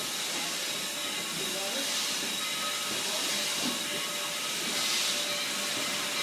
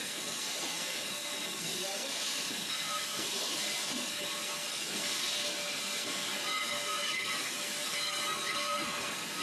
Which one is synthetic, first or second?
second